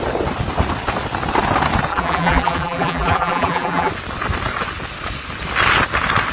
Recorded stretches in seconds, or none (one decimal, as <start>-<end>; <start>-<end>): 0.0-1.9; 3.9-6.3

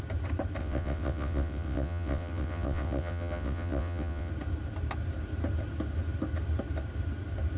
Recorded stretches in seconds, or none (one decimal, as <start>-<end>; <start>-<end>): 0.0-0.6; 4.3-7.6

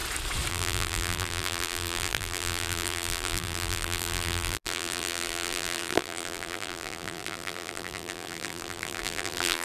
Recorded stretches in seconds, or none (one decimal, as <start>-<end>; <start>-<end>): 0.0-0.5

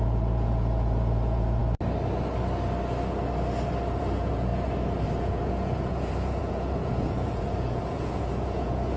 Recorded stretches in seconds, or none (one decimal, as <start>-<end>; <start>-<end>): 1.6-4.0; 4.5-5.2

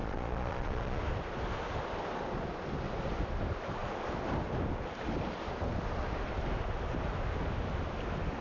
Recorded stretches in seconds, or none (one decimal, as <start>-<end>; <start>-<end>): 1.0-8.4

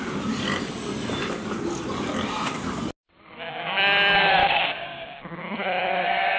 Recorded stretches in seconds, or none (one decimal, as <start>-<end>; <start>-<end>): 0.0-4.4; 5.4-6.4